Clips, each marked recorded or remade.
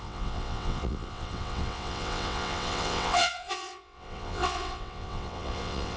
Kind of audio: remade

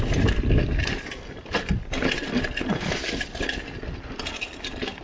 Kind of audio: recorded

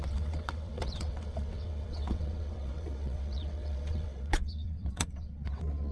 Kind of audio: remade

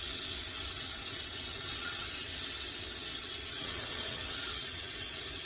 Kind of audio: remade